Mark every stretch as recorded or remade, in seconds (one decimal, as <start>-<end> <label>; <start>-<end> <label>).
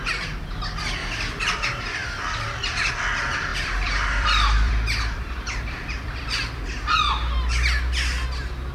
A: 0.0-3.5 recorded; 3.5-6.6 remade; 6.6-8.7 recorded